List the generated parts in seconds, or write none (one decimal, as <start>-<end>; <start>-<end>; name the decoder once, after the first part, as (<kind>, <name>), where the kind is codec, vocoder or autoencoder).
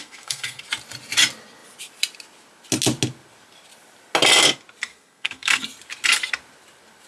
0.0-0.6 (codec, SNAC); 4.9-5.6